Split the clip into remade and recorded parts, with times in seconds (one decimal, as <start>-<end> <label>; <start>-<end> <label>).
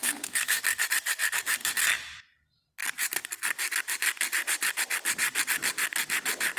0.0-0.6 remade; 0.6-6.6 recorded